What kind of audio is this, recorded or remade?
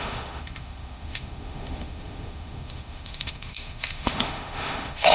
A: remade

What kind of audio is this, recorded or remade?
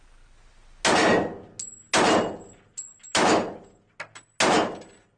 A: recorded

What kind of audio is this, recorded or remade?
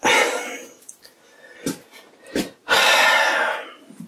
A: recorded